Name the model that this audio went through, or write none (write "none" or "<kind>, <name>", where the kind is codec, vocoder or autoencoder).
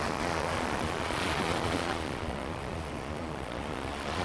vocoder, Vocos